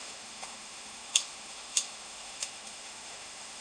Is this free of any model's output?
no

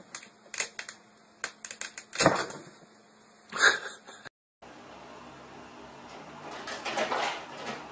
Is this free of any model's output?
yes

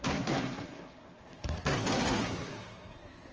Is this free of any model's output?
no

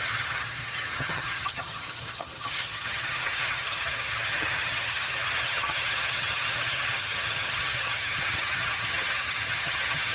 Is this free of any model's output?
no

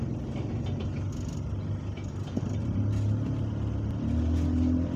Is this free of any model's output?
yes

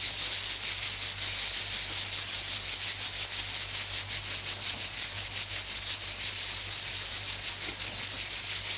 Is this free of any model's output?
yes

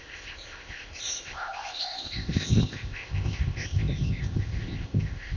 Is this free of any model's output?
no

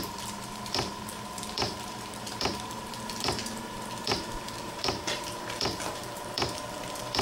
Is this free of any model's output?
no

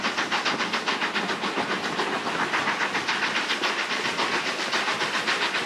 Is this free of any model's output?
yes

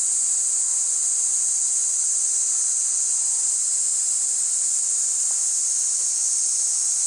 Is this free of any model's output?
yes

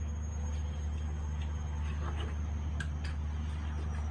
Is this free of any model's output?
yes